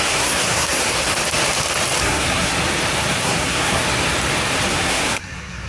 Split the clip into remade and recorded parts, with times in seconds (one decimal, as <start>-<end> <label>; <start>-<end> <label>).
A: 0.0-0.9 remade; 0.9-2.0 recorded; 2.0-2.5 remade; 2.5-3.2 recorded; 3.2-3.8 remade; 3.8-4.7 recorded; 4.7-5.7 remade